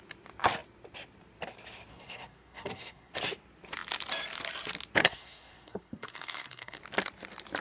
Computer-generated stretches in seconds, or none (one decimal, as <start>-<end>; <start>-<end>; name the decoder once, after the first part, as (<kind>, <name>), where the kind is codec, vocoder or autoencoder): 1.9-3.1 (codec, SNAC); 5.0-6.8